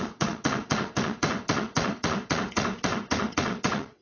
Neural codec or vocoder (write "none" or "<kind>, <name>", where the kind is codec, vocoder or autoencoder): vocoder, WaveNeXt